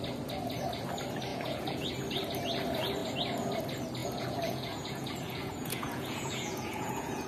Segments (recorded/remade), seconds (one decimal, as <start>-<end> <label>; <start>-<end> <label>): 0.0-1.3 recorded; 1.3-1.9 remade; 1.9-4.0 recorded; 4.0-7.3 remade